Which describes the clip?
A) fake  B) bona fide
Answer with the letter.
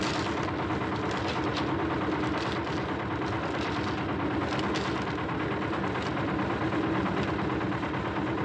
B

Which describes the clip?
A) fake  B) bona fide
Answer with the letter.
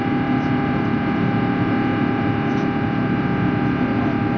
B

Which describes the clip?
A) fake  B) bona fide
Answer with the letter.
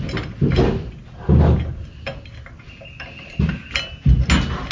B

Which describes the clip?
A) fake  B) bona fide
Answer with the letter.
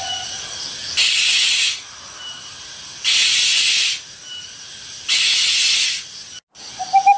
B